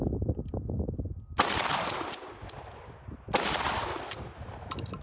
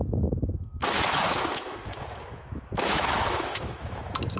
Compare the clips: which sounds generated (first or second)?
second